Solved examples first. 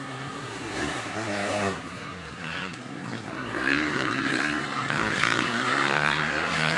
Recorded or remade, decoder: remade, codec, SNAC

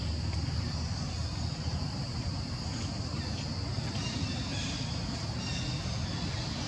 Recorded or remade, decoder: recorded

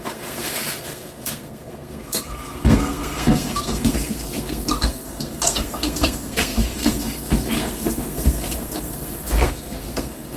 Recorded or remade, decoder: remade, codec, SNAC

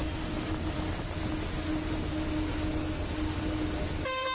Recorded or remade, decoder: recorded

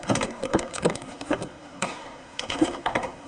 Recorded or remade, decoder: remade, codec, SNAC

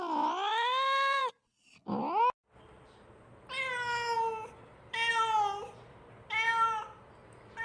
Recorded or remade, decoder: recorded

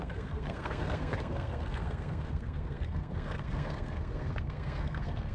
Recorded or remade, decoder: remade, codec, SNAC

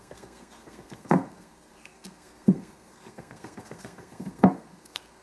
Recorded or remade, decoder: remade, codec, SNAC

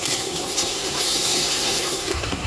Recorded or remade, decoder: remade, codec, SNAC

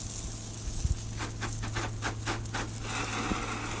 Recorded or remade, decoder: recorded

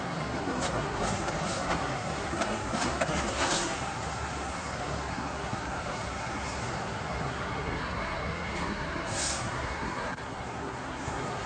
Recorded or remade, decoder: remade, codec, SNAC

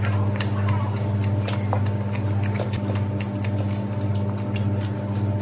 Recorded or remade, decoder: recorded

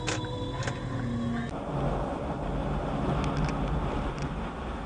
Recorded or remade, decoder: recorded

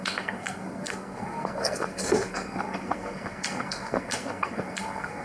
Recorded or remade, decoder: remade, codec, SNAC